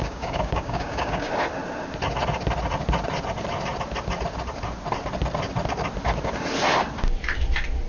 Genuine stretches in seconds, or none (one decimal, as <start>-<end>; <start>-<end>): 1.3-7.9